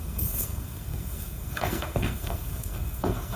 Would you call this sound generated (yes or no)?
yes